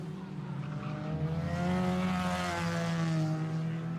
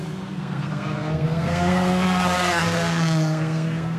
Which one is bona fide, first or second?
first